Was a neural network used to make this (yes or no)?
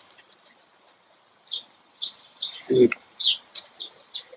yes